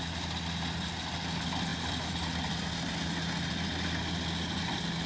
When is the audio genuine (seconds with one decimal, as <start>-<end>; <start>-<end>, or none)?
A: 0.0-5.1

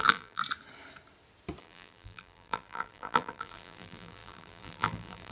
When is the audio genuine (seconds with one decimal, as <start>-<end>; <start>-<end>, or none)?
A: 0.4-1.6

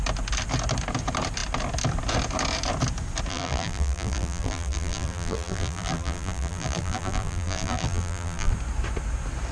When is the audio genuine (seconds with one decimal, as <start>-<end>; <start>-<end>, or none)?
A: 0.0-3.3; 8.5-9.5

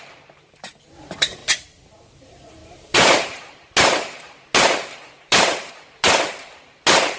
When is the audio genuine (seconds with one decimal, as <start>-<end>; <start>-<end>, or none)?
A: 1.4-2.2

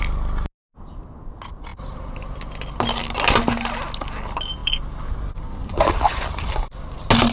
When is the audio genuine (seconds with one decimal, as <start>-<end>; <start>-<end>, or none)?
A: 0.0-1.7; 2.4-5.7; 6.4-7.3

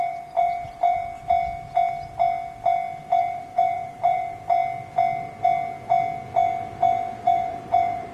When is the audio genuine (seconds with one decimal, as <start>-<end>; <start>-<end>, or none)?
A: 1.0-3.2; 4.6-7.2

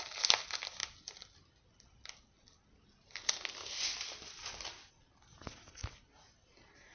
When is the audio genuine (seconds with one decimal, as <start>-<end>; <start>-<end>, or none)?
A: 0.0-6.9